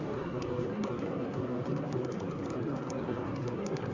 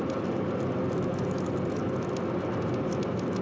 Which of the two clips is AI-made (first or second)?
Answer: first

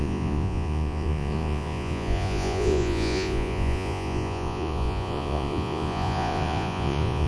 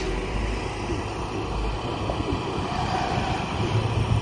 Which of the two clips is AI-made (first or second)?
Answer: first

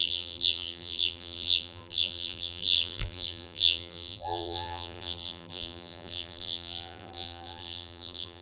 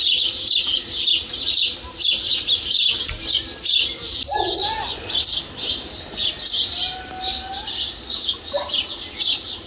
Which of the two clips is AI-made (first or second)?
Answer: first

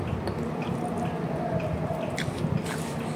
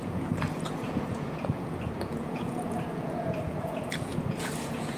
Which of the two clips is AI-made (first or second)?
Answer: second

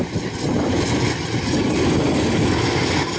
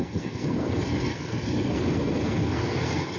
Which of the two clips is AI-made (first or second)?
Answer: second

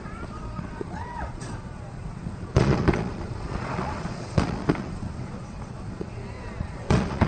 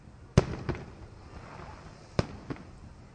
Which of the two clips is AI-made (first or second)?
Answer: first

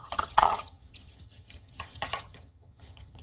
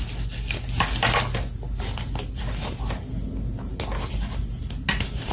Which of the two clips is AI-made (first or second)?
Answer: first